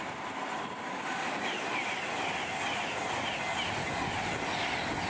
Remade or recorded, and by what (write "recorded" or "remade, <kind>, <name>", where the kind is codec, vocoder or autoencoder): recorded